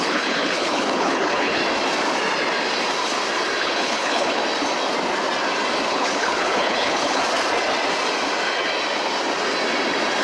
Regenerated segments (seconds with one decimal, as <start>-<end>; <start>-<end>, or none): 0.0-1.6; 3.6-4.4; 5.9-7.2